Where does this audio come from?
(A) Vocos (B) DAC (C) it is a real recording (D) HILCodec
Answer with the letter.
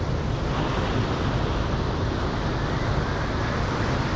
C